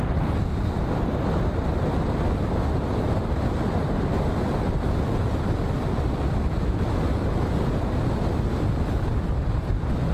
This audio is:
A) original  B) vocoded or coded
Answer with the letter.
A